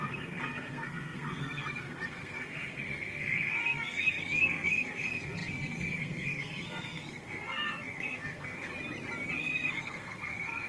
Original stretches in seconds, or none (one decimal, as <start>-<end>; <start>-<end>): 8.7-9.4